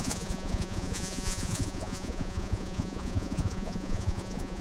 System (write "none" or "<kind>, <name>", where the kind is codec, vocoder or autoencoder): vocoder, Vocos